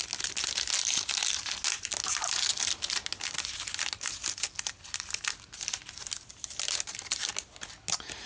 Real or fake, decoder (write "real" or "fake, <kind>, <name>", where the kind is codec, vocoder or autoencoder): real